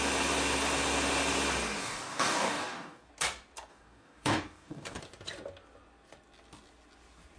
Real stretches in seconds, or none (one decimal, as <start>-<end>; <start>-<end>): 0.0-1.8; 3.1-3.7; 5.0-7.4